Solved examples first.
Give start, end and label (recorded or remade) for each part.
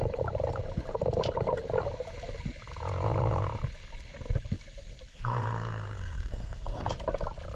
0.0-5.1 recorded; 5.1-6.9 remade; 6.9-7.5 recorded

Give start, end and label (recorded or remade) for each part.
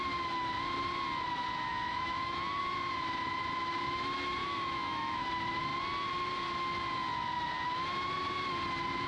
0.0-1.7 recorded; 1.7-2.6 remade; 2.6-4.4 recorded; 4.4-5.3 remade; 5.3-9.1 recorded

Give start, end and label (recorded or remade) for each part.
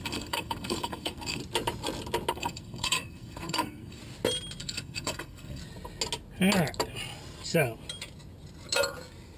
0.0-1.4 remade; 1.4-2.3 recorded; 2.3-4.0 remade; 4.0-4.6 recorded; 4.6-5.6 remade; 5.6-9.4 recorded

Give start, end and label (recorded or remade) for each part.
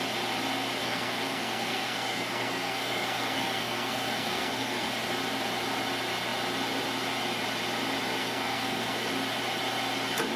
0.0-0.8 recorded; 0.8-4.9 remade; 4.9-8.2 recorded; 8.2-9.1 remade; 9.1-10.4 recorded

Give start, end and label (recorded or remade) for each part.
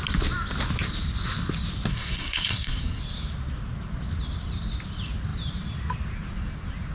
0.0-1.9 recorded; 1.9-3.0 remade; 3.0-6.9 recorded